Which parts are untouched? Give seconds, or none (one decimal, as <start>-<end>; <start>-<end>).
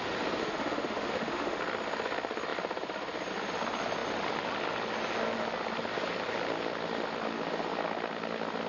0.0-0.4; 1.6-8.7